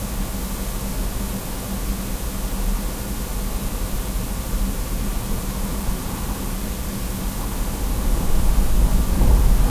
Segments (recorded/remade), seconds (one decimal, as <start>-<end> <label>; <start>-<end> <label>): 0.0-3.3 recorded; 3.3-6.9 remade; 6.9-9.7 recorded